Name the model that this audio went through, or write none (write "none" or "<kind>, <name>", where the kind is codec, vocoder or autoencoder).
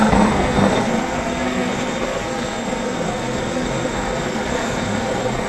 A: codec, SNAC